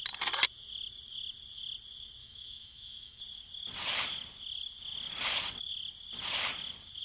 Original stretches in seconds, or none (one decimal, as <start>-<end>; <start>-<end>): 0.0-2.2; 3.2-7.0

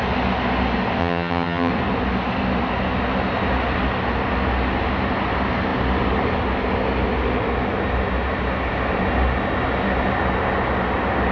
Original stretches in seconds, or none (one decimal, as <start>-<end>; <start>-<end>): 0.0-1.0; 1.7-11.3

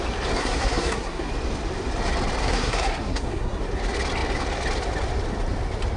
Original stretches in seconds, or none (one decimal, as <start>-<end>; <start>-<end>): 0.0-0.4; 1.3-2.4; 3.6-6.0

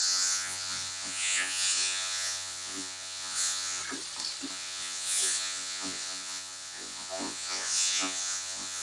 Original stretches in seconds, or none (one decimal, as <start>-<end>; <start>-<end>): 3.8-4.5